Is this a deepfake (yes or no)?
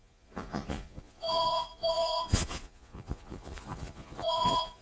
yes